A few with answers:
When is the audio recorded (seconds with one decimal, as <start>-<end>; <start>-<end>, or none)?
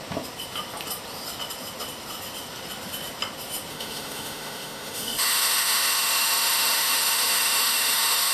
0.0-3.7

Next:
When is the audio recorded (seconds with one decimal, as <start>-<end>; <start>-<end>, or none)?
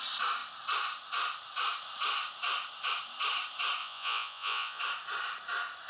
0.0-3.8; 4.8-5.9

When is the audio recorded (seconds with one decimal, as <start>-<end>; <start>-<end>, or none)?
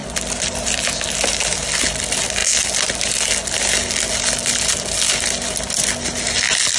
0.8-6.8